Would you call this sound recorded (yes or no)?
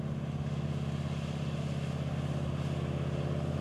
yes